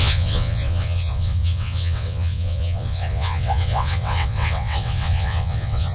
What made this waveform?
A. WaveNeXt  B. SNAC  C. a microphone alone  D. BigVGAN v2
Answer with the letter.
A